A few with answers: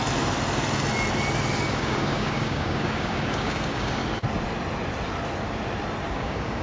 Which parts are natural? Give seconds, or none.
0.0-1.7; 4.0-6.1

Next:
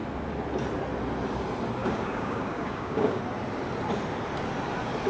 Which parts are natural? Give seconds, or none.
0.0-1.8; 3.2-5.1

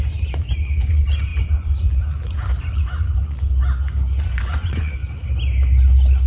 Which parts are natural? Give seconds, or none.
3.5-4.2; 5.0-6.3

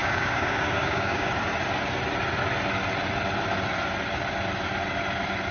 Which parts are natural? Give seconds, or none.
1.3-5.5